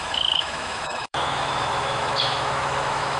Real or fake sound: fake